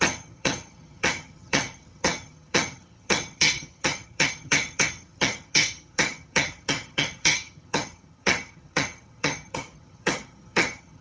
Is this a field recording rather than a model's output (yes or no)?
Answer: no